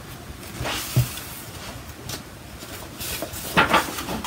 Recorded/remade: recorded